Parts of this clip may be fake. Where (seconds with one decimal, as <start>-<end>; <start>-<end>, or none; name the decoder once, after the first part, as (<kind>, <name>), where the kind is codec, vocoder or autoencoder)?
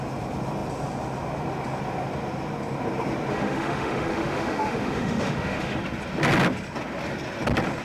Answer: 3.3-5.8 (autoencoder, DAC-VAE)